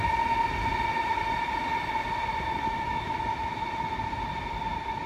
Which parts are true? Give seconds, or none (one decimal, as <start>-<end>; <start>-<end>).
0.0-2.5; 3.2-5.1

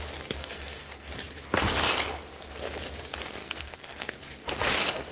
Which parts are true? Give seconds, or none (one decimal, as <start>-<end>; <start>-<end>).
0.0-0.4; 1.1-3.4; 4.1-5.1